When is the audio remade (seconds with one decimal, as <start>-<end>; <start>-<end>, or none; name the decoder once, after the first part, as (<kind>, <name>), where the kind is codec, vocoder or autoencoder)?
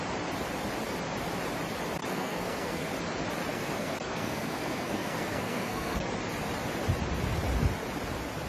2.0-2.9 (codec, SNAC); 3.5-6.1